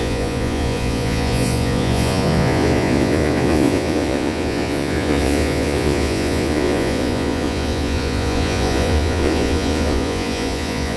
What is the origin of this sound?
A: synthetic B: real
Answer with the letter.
A